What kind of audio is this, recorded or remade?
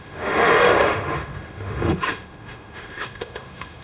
remade